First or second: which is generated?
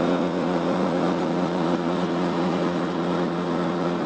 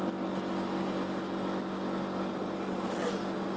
first